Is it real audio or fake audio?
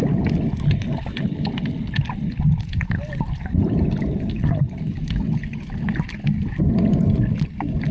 real